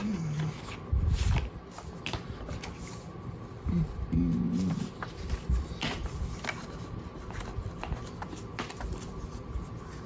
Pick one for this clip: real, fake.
real